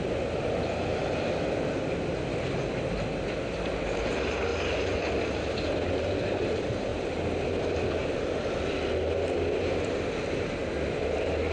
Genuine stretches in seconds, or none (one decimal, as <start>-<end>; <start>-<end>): 0.0-1.0; 1.6-6.9; 7.5-8.0; 9.0-11.5